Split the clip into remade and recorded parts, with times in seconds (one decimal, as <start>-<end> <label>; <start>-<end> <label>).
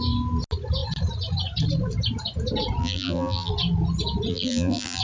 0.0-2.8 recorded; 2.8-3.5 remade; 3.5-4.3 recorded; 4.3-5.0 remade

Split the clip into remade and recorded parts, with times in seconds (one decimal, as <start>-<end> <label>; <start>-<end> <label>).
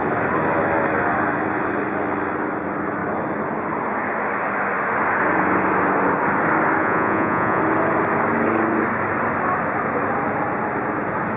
0.0-6.8 recorded; 6.8-7.6 remade; 7.6-11.4 recorded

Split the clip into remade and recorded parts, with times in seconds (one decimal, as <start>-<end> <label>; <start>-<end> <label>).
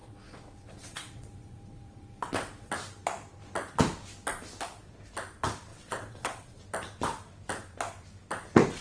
0.0-2.7 remade; 2.7-5.7 recorded; 5.7-6.6 remade; 6.6-8.8 recorded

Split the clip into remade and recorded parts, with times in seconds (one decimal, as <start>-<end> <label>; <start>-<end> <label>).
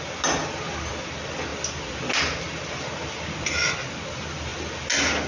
0.0-5.3 recorded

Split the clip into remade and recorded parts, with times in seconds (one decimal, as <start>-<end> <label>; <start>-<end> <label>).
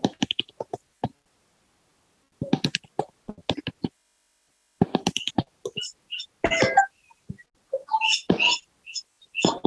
0.0-9.7 recorded